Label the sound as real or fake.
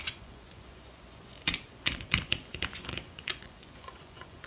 fake